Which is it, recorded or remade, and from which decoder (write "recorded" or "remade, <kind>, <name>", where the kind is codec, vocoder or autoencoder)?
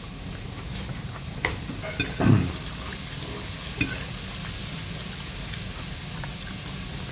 recorded